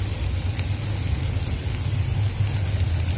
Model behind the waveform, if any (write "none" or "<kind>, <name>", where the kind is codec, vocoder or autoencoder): none